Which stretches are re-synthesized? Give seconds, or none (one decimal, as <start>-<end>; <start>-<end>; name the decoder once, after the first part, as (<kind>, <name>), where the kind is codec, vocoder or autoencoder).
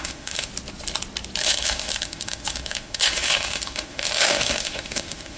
0.0-0.5 (autoencoder, DAC-VAE); 1.4-5.4